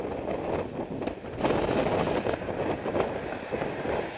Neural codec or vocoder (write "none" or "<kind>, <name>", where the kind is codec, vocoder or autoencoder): none